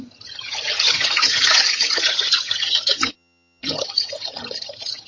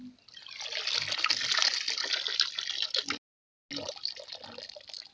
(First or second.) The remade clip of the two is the first